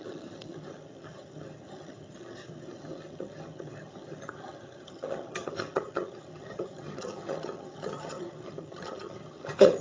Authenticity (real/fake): fake